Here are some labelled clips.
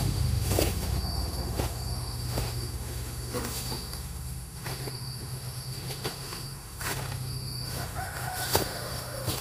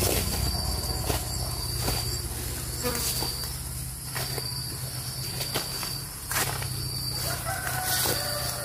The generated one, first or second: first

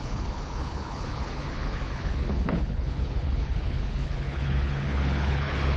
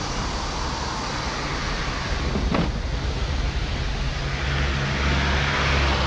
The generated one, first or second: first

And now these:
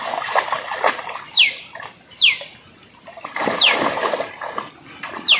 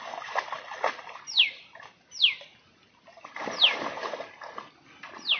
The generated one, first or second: first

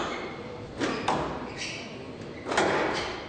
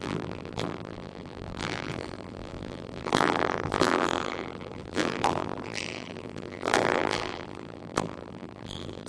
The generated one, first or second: second